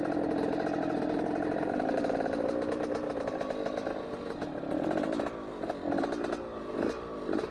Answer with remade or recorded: recorded